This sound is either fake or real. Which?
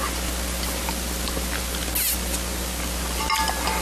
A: real